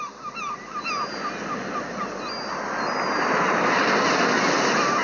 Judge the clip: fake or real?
real